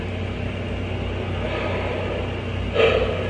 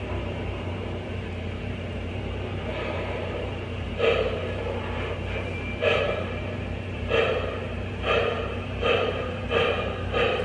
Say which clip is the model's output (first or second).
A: second